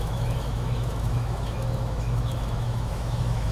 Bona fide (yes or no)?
no